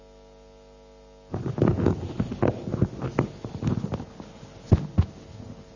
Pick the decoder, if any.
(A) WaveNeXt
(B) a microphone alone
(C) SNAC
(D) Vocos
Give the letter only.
B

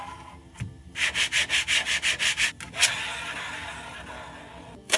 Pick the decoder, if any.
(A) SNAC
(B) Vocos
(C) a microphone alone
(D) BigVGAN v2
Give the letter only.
C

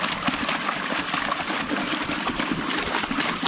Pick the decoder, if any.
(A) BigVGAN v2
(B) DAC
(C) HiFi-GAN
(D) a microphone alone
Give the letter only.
D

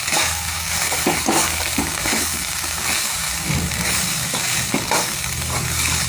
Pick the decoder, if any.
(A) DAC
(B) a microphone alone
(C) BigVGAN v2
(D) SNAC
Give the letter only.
A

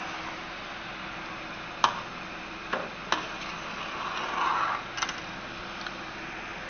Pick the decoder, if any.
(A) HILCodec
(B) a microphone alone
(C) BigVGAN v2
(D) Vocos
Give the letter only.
B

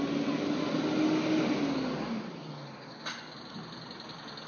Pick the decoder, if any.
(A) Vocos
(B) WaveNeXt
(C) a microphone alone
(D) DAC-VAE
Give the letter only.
C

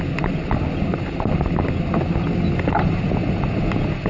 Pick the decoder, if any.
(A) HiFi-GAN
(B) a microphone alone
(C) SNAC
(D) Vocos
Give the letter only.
B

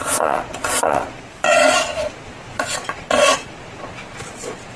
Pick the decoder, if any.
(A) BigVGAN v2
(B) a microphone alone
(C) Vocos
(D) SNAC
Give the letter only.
C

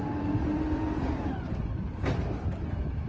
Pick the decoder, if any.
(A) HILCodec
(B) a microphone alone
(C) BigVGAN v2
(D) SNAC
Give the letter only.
B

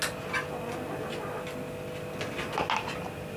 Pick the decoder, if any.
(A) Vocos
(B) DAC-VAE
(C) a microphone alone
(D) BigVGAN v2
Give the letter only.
C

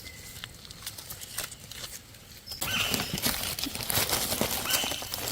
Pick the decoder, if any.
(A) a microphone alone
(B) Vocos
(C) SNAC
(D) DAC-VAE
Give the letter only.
A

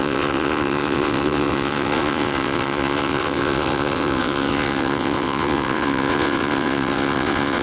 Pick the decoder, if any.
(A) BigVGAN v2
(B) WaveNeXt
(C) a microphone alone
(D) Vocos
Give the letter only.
B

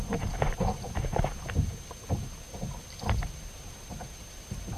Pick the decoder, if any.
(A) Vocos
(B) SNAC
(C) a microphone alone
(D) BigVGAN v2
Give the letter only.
C